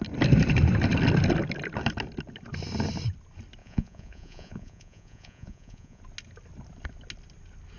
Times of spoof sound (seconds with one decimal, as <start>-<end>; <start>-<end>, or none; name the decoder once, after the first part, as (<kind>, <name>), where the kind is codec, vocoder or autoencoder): 3.6-6.0 (vocoder, Vocos)